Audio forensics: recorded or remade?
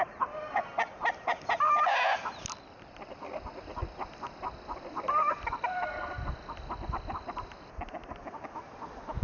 recorded